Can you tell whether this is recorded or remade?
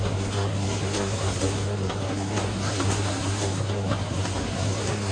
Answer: remade